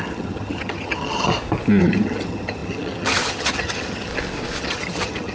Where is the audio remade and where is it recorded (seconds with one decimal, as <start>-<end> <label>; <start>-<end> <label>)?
0.0-1.3 remade; 1.3-1.8 recorded; 1.8-4.1 remade; 4.1-4.6 recorded; 4.6-5.3 remade

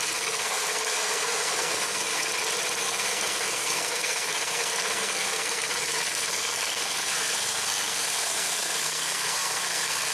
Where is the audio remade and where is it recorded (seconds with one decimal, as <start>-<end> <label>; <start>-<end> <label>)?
0.0-2.3 remade; 2.3-2.8 recorded; 2.8-10.1 remade

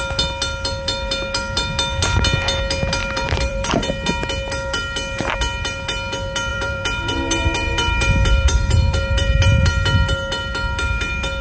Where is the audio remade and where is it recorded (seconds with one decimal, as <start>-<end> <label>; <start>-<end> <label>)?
0.0-3.0 recorded; 3.0-3.8 remade; 3.8-6.5 recorded; 6.5-9.7 remade; 9.7-11.4 recorded

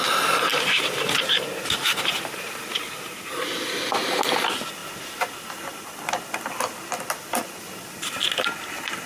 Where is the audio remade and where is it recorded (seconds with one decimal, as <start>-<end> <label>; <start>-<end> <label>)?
0.0-0.5 recorded; 0.5-3.8 remade; 3.8-9.1 recorded

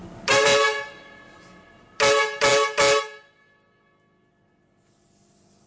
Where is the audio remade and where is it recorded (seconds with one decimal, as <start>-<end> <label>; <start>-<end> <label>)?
0.0-5.7 recorded